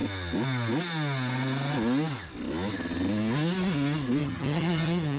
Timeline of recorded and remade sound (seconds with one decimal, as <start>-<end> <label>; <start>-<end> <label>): 0.0-4.2 recorded; 4.2-5.2 remade

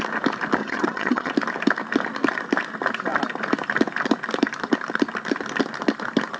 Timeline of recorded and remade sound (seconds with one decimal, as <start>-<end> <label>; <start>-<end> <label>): 0.0-0.6 recorded; 0.6-1.3 remade; 1.3-6.4 recorded

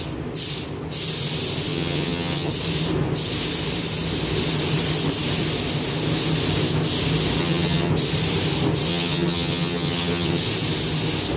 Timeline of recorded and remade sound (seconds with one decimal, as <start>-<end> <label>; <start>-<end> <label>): 0.0-1.7 recorded; 1.7-2.5 remade; 2.5-7.4 recorded; 7.4-7.9 remade; 7.9-8.9 recorded; 8.9-10.4 remade; 10.4-11.4 recorded